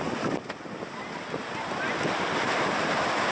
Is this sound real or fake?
real